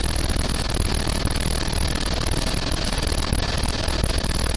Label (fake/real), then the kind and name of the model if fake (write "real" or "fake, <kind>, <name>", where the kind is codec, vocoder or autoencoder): real